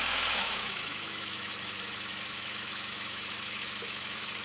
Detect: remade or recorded remade